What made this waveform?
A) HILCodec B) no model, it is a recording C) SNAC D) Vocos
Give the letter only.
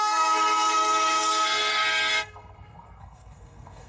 C